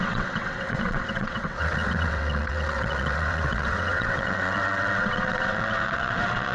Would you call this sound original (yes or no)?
no